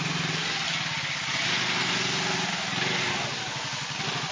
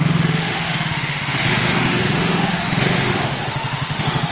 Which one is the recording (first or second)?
first